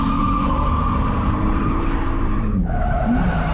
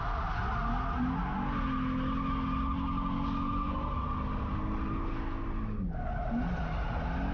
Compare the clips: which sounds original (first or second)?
second